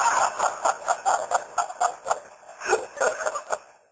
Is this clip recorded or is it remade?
recorded